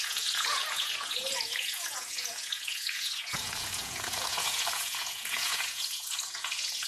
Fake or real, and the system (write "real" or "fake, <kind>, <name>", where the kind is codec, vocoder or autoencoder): fake, vocoder, Vocos